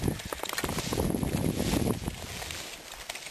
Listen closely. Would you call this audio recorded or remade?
remade